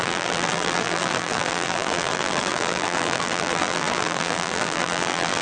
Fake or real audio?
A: fake